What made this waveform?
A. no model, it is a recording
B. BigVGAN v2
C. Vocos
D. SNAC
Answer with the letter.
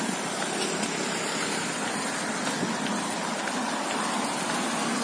A